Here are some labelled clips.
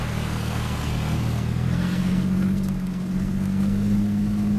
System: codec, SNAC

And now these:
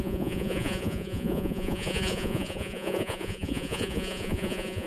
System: vocoder, Vocos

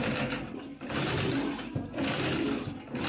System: none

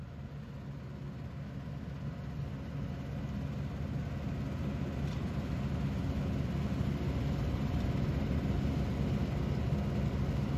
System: none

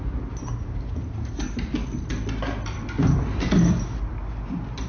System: none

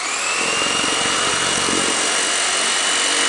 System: none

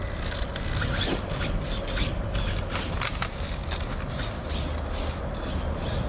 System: none